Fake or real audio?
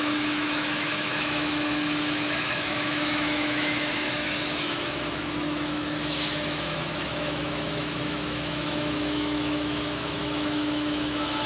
fake